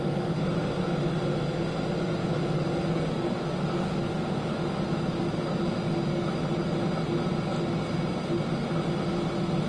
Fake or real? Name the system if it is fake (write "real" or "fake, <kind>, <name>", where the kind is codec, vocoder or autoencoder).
real